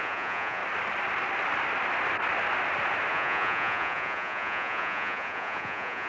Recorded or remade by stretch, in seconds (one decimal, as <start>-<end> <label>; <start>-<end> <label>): 0.0-0.6 remade; 0.6-3.1 recorded; 3.1-6.1 remade